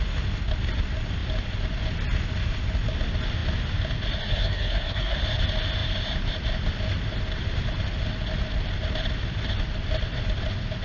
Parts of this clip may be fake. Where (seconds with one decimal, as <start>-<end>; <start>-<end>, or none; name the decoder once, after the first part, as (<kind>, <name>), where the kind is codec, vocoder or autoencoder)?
4.3-5.2 (codec, SNAC)